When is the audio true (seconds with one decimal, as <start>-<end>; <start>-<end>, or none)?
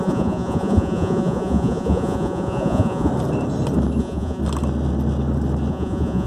3.1-4.0; 4.4-5.7